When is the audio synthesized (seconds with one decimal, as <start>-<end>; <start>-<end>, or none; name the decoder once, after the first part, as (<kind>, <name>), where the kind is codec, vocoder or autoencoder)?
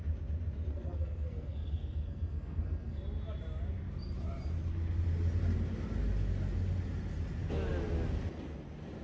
0.7-3.0 (codec, SNAC)